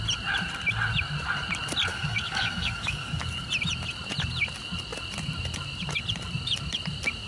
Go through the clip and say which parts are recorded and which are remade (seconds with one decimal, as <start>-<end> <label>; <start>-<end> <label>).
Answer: 0.0-1.9 recorded; 1.9-3.2 remade; 3.2-7.3 recorded